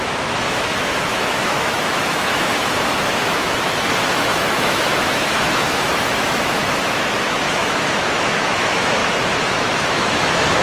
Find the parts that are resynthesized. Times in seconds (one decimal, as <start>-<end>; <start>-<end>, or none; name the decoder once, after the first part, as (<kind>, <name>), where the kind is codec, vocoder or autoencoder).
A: 0.0-10.6 (autoencoder, DAC-VAE)